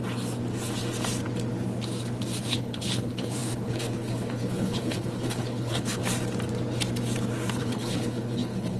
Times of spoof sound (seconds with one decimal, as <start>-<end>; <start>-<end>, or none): 2.4-6.0; 7.6-8.8